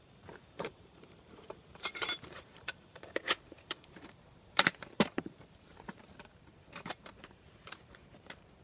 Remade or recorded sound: remade